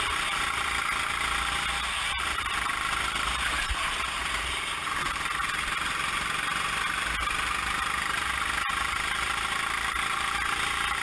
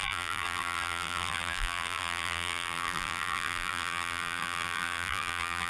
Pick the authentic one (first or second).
first